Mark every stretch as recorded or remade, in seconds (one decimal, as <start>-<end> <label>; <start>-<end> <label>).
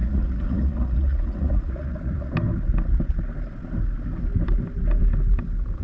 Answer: 0.0-2.3 remade; 2.3-5.8 recorded